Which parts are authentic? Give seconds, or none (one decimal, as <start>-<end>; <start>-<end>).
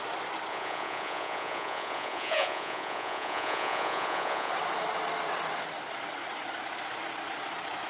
0.0-0.5; 4.5-7.9